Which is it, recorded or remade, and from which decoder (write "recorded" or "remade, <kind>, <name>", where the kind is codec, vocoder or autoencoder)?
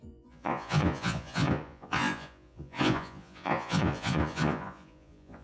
remade, vocoder, Vocos